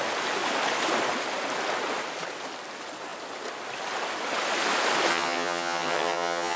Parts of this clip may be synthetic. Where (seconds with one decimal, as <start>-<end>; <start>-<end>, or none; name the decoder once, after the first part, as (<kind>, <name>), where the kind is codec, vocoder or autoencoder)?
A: 5.1-6.6 (vocoder, HiFi-GAN)